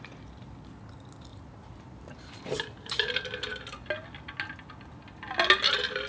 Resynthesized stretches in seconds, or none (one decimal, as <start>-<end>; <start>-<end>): 1.3-3.1